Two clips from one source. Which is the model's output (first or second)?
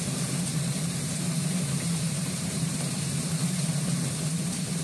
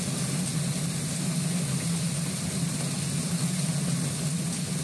first